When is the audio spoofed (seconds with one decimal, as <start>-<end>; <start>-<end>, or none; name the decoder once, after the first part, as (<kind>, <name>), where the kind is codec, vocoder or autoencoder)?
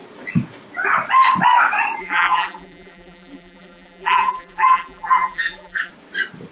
2.0-5.9 (vocoder, BigVGAN v2)